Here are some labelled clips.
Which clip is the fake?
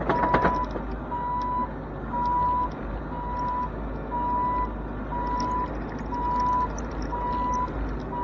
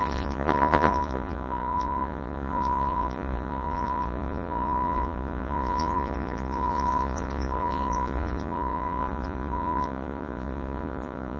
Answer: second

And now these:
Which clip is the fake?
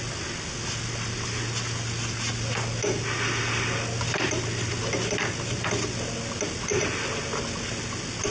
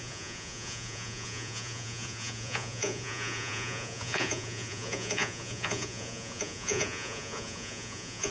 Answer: second